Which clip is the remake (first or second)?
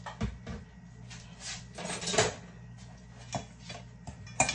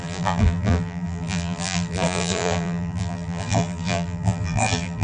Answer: second